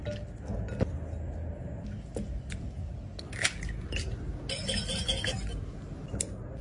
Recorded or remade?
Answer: recorded